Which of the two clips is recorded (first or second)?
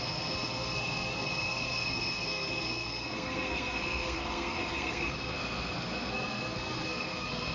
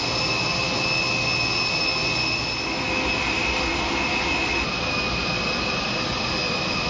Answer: second